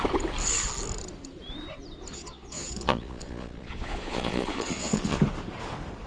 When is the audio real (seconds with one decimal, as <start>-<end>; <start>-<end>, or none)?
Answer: 0.0-2.1; 5.2-6.1